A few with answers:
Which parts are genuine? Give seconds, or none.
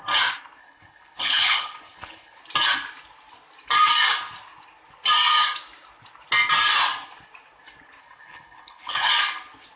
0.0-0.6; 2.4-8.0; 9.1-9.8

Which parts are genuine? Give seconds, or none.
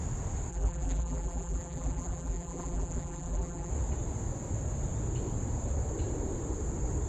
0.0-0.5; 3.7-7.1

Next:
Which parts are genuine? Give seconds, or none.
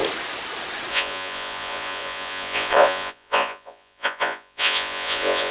0.0-0.9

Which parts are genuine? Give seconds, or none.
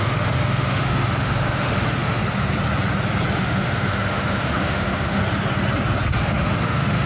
2.2-3.4; 5.2-6.2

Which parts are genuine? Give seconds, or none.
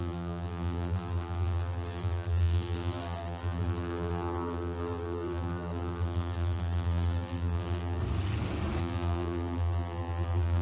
8.0-8.8